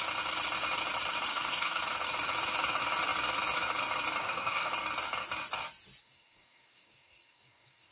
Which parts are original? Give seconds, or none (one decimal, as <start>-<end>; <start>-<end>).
0.0-1.3; 1.8-4.2; 4.7-6.0